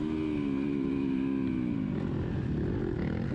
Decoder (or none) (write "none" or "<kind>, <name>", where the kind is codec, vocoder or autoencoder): none